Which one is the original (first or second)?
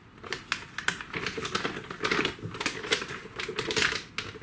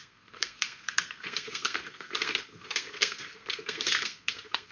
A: first